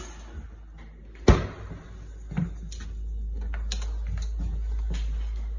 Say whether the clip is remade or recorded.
recorded